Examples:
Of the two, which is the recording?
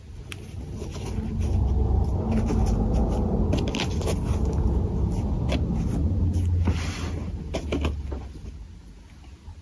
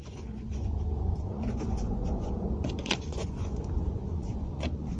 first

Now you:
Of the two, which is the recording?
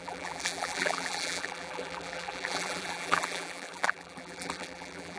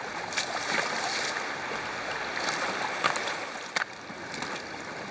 second